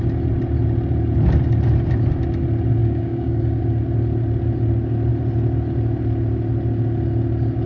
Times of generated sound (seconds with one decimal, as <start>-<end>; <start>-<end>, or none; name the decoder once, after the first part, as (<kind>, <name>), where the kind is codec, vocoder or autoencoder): 2.8-3.6 (codec, DAC)